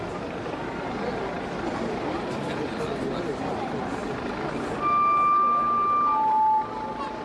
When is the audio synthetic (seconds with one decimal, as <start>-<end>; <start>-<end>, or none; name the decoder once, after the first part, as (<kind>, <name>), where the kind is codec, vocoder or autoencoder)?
none